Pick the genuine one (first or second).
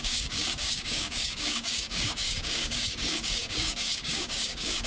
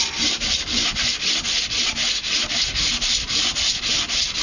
second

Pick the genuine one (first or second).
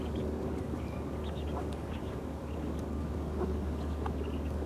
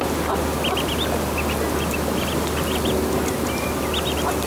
second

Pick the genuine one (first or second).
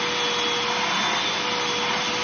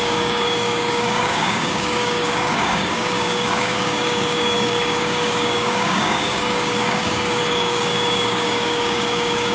first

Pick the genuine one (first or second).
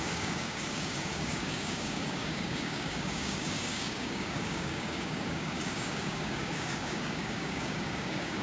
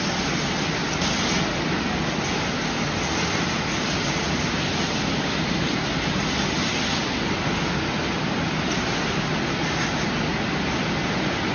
second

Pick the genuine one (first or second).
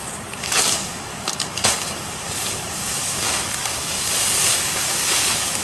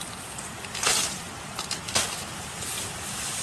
second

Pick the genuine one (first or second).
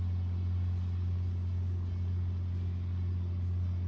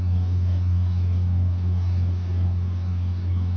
first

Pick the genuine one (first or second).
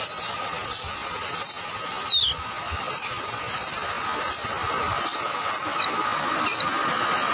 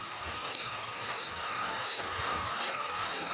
first